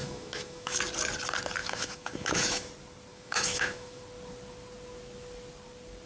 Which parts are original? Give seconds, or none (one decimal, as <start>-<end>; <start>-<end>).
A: 0.8-1.6; 2.7-3.1; 4.0-6.1